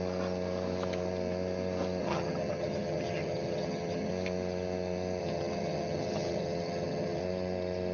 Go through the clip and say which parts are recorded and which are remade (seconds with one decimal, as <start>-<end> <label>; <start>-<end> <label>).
0.0-2.0 recorded; 2.0-4.1 remade; 4.1-5.2 recorded; 5.2-7.2 remade; 7.2-7.9 recorded